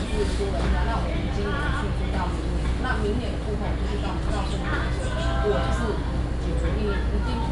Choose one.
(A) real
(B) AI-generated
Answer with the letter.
A